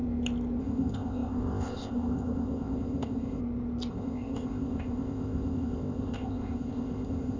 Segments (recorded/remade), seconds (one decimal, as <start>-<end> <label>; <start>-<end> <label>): 0.0-0.6 recorded; 0.6-3.4 remade; 3.4-3.9 recorded; 3.9-7.4 remade